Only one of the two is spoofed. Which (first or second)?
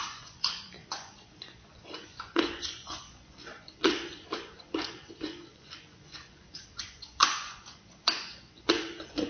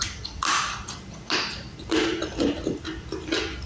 first